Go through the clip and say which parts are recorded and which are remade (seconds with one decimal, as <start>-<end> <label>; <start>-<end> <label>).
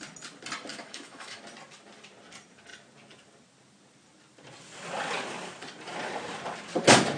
0.0-0.7 recorded; 0.7-1.4 remade; 1.4-7.2 recorded